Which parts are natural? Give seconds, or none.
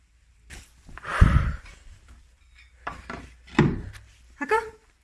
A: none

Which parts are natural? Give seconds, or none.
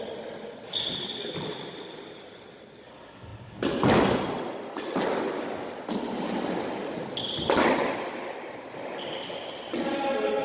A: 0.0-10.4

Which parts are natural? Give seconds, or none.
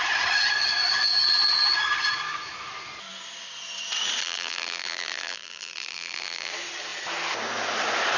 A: 0.0-4.2; 6.5-8.2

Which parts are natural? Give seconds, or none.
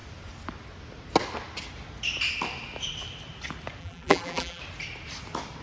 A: 0.0-3.8; 4.6-5.6